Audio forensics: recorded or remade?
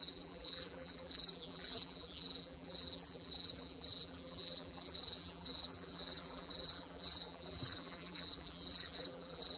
remade